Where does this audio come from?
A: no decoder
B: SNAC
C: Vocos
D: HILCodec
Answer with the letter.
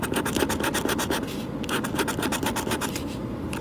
A